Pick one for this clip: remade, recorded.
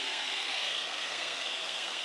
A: remade